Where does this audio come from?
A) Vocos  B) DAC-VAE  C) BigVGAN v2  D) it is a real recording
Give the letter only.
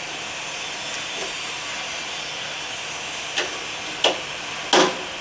D